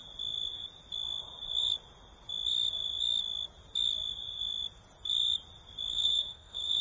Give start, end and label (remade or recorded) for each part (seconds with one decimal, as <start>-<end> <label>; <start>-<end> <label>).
0.0-5.9 recorded; 5.9-6.8 remade

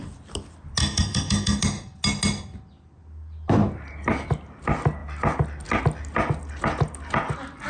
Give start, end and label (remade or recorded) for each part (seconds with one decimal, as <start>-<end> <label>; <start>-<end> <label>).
0.0-0.8 recorded; 0.8-1.6 remade; 1.6-7.7 recorded